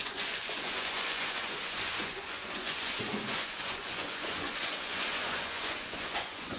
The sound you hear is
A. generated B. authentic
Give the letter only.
A